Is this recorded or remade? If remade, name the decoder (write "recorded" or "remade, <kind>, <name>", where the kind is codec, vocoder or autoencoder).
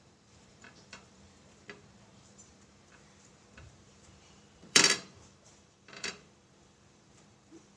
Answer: remade, vocoder, BigVGAN v2